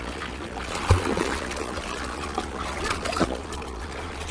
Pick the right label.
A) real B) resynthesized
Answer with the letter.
B